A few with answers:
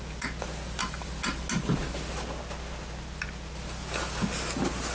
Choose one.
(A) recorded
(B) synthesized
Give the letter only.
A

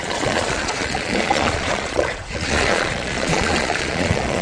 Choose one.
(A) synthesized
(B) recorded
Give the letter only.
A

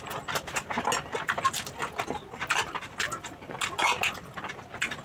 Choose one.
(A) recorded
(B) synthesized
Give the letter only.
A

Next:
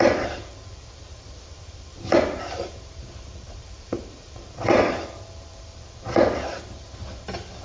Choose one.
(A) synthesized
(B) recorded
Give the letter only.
A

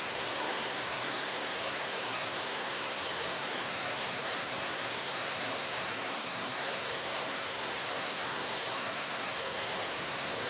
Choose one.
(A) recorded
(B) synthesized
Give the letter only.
B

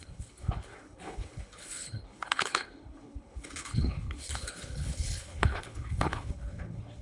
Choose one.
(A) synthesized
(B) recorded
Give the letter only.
A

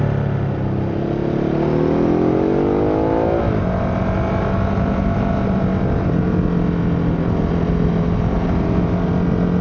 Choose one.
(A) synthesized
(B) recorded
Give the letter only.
B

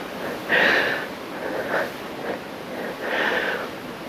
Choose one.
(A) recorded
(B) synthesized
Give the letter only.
A